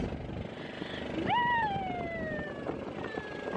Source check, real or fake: real